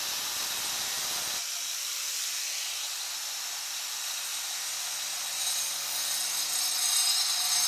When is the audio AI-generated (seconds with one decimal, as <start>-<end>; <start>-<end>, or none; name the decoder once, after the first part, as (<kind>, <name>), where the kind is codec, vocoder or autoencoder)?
none